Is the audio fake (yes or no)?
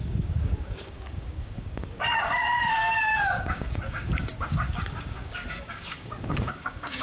yes